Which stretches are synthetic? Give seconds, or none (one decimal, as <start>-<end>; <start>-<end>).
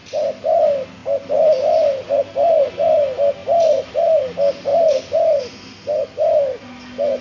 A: 1.0-2.7; 4.7-5.4